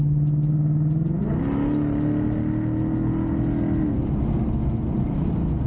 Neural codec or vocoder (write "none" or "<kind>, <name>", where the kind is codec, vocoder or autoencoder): none